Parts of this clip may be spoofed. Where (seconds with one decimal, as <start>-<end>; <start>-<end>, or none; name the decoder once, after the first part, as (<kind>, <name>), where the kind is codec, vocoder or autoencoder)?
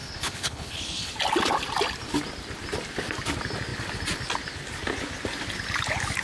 0.0-1.1 (codec, HILCodec)